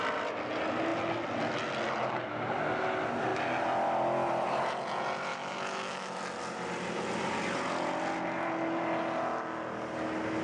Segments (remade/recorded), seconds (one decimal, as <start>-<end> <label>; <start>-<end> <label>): 0.0-5.3 recorded; 5.3-6.2 remade; 6.2-10.4 recorded

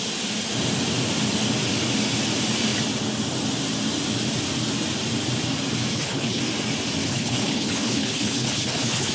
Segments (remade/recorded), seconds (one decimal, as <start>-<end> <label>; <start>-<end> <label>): 0.0-5.9 recorded; 5.9-6.4 remade; 6.4-7.0 recorded; 7.0-9.1 remade